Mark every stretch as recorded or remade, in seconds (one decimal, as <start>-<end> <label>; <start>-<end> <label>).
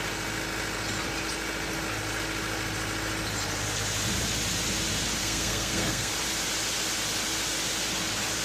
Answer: 0.0-5.2 recorded; 5.2-6.1 remade; 6.1-8.4 recorded